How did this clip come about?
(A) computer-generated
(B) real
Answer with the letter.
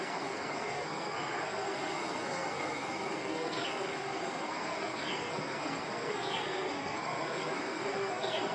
A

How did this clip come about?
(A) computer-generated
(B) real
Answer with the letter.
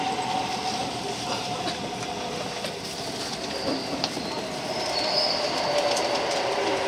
B